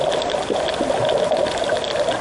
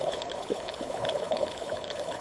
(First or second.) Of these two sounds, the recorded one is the first